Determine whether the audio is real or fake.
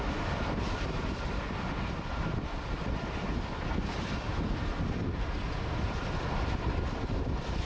real